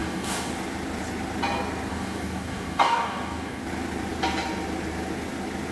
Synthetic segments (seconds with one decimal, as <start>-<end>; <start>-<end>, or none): 0.0-0.5; 1.9-3.6